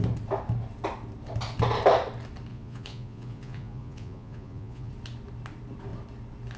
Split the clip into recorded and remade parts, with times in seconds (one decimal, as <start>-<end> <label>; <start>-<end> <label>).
0.0-2.5 recorded; 2.5-4.9 remade; 4.9-6.6 recorded